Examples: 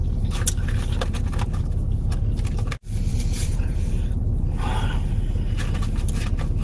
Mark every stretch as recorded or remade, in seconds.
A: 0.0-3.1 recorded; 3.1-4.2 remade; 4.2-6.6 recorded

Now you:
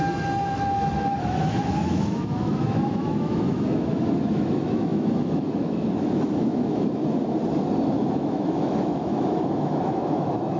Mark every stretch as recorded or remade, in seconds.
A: 0.0-7.0 remade; 7.0-8.1 recorded; 8.1-10.6 remade

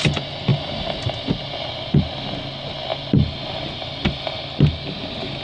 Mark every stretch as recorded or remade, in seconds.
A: 0.0-5.4 recorded

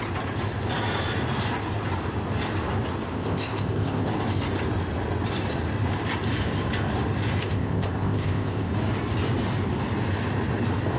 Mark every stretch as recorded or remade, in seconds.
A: 0.0-3.1 recorded; 3.1-4.1 remade; 4.1-7.4 recorded; 7.4-8.7 remade; 8.7-11.0 recorded

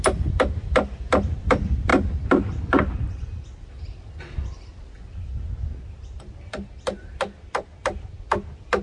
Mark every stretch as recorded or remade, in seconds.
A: 0.0-8.8 recorded

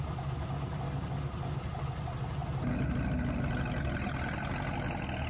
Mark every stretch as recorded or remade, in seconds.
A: 0.0-5.3 recorded